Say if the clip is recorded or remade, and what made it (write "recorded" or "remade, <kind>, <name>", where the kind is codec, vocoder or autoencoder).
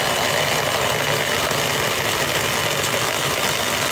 recorded